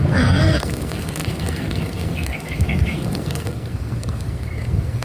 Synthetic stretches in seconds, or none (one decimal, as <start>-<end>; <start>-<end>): 0.0-5.0